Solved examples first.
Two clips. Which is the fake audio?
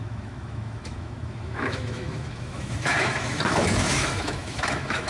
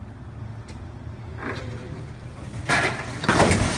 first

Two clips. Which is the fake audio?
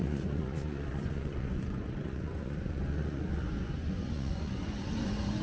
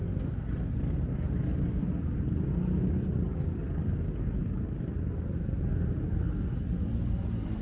first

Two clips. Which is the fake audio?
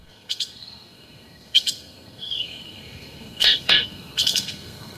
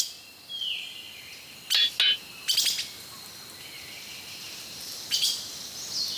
first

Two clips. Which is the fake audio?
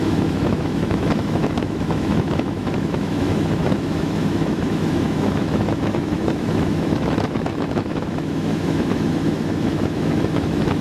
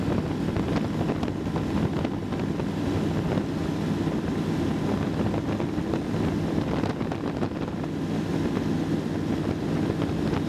first